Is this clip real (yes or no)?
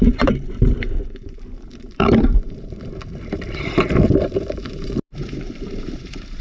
no